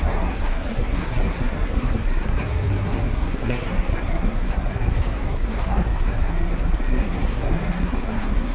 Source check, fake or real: fake